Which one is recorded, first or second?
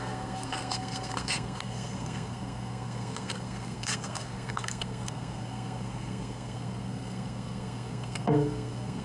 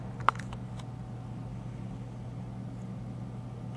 second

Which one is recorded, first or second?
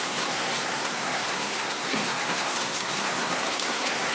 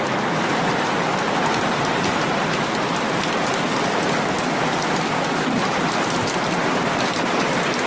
second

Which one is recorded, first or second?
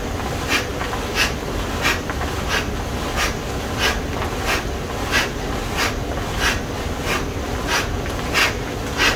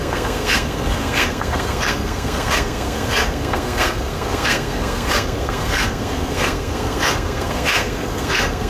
first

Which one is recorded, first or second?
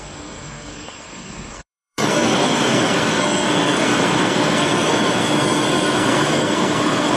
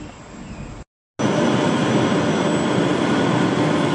second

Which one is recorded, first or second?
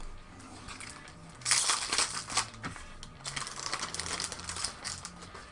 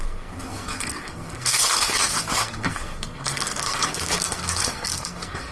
first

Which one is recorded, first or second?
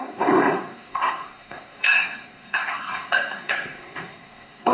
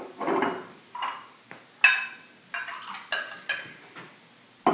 second